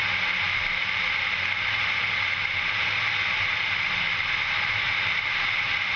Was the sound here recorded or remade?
recorded